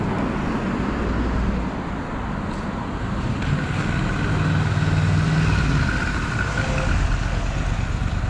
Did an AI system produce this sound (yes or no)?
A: no